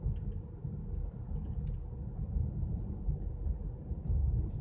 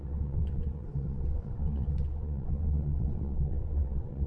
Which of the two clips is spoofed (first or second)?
second